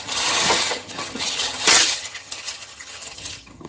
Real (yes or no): no